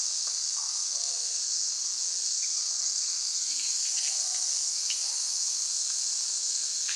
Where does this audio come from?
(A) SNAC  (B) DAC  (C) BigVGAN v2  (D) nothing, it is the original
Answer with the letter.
A